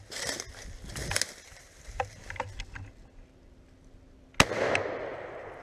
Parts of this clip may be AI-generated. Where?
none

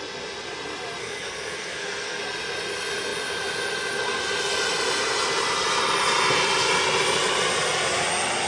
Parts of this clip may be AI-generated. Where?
1.0-2.2

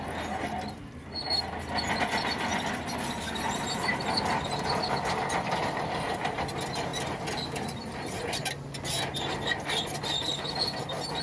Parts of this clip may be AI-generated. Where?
none

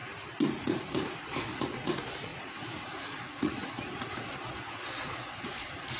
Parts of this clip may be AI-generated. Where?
0.6-6.0

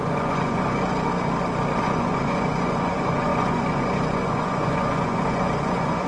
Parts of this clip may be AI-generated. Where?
0.0-1.1; 1.8-6.1